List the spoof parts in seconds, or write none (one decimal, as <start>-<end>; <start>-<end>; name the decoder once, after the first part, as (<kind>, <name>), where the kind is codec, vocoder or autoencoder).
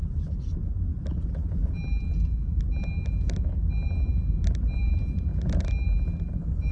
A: 0.0-0.9 (vocoder, BigVGAN v2); 4.8-5.3; 6.3-6.7